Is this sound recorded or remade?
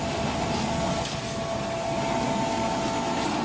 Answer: recorded